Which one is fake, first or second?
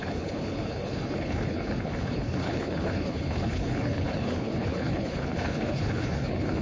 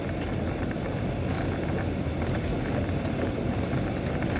first